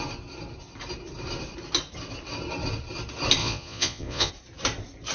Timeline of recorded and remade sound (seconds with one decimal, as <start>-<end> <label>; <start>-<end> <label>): 0.0-3.4 recorded; 3.4-4.3 remade; 4.3-5.1 recorded